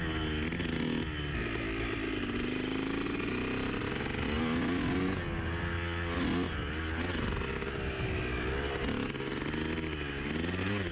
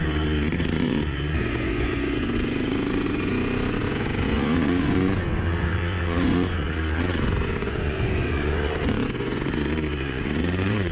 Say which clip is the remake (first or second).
second